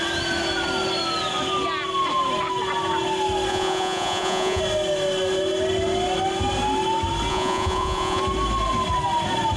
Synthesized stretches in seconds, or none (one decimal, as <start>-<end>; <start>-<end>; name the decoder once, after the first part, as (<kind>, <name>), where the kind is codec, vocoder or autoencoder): 3.5-4.6 (vocoder, Vocos); 7.3-8.2